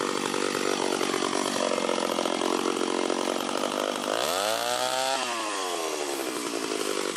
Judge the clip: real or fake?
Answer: real